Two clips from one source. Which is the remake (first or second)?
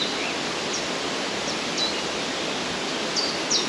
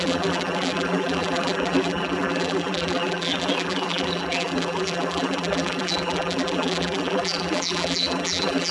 second